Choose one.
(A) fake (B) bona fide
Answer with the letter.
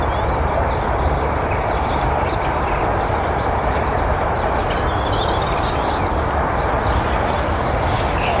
B